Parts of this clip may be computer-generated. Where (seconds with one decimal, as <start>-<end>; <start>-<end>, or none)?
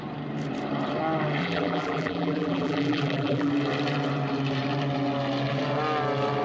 1.4-3.5